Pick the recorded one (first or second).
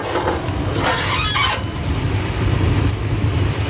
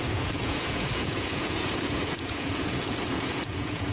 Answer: first